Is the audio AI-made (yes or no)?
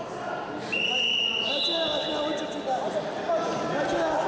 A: no